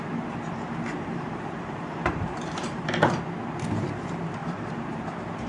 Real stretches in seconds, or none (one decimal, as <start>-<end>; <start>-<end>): 0.0-0.9; 3.2-4.4; 5.0-5.5